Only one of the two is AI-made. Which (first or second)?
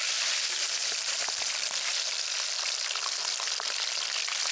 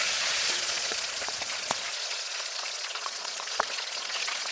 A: second